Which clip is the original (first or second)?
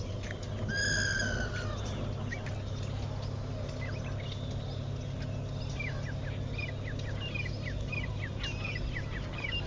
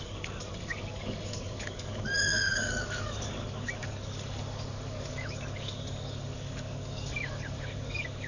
first